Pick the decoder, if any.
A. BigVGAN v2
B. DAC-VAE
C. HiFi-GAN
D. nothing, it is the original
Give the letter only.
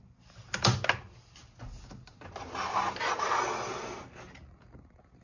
D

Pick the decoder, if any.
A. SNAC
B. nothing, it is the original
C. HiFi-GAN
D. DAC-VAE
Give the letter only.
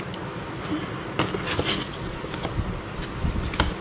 B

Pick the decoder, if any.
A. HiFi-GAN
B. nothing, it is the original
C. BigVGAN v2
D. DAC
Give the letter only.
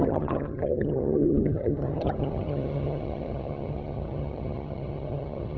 A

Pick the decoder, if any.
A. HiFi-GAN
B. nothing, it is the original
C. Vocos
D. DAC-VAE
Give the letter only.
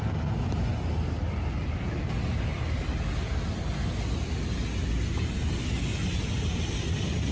B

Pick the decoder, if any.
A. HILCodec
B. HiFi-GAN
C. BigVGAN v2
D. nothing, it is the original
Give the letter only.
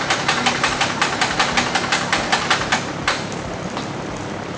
D